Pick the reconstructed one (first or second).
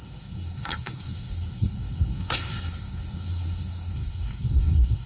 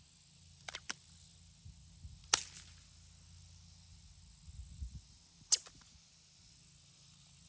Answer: first